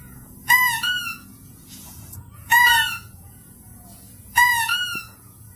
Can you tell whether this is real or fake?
fake